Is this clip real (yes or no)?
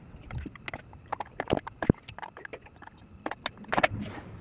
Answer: yes